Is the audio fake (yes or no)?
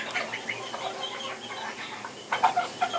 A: no